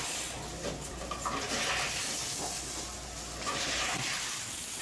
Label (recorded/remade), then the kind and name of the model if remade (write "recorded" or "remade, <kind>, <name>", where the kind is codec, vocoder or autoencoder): recorded